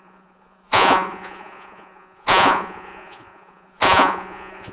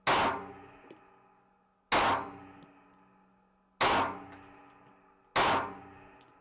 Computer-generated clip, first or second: first